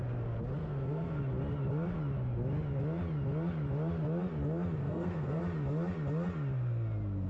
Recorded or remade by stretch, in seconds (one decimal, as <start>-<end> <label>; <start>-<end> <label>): 0.0-0.6 recorded; 0.6-1.2 remade; 1.2-4.8 recorded; 4.8-5.4 remade; 5.4-7.3 recorded